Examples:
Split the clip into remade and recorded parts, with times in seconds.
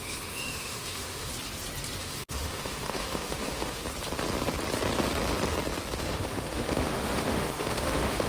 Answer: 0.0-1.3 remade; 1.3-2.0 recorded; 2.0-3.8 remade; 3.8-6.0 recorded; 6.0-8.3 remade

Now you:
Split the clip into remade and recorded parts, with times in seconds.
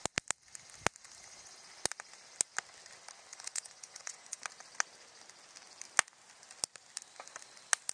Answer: 0.0-3.3 recorded; 3.3-4.4 remade; 4.4-7.9 recorded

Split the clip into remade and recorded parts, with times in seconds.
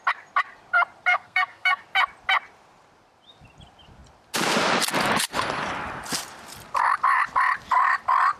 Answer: 0.0-1.1 recorded; 1.1-1.8 remade; 1.8-8.4 recorded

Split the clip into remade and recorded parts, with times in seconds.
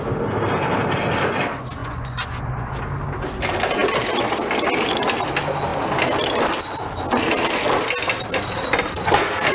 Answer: 0.0-1.8 recorded; 1.8-2.7 remade; 2.7-9.5 recorded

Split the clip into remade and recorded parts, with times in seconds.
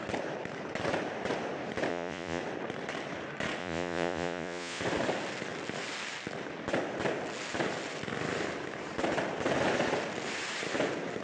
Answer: 0.0-1.9 recorded; 1.9-2.4 remade; 2.4-3.6 recorded; 3.6-4.8 remade; 4.8-11.2 recorded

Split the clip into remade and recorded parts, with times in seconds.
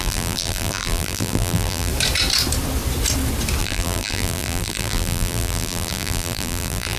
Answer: 0.0-1.9 remade; 1.9-3.6 recorded; 3.6-7.0 remade